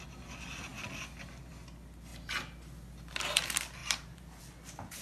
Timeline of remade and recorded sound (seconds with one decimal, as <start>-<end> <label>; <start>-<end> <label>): 0.0-3.8 recorded; 3.8-4.4 remade; 4.4-5.0 recorded